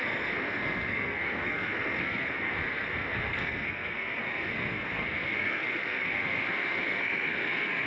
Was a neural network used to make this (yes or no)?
yes